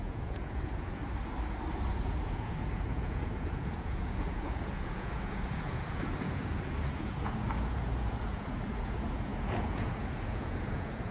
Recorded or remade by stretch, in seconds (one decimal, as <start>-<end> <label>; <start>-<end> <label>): 0.0-1.0 remade; 1.0-1.9 recorded; 1.9-11.1 remade